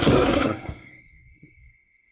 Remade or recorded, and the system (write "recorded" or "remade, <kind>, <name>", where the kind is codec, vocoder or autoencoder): remade, codec, SNAC